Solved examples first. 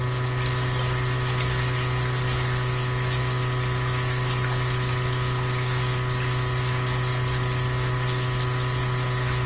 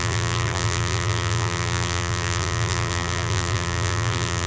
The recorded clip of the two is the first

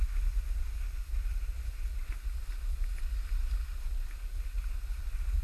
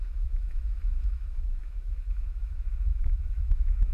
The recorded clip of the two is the first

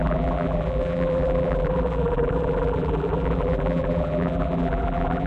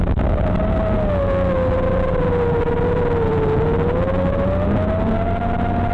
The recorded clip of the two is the second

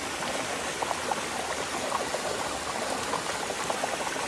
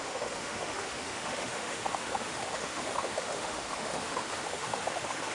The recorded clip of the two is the first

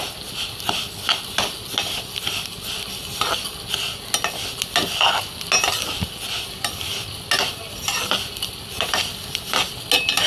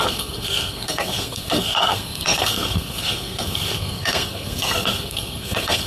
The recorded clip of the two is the first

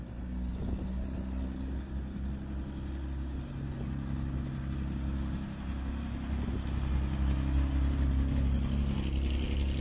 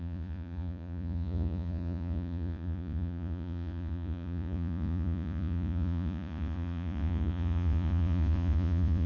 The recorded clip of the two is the first